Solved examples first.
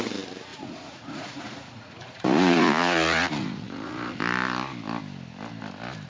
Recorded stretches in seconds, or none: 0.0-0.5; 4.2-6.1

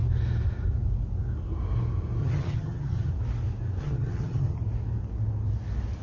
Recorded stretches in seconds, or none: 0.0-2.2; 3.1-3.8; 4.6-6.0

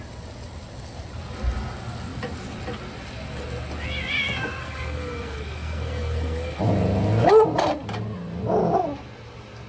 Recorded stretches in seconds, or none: 0.0-4.6; 6.6-9.7